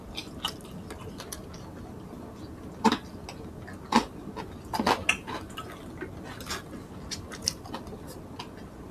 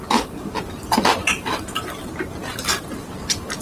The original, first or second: first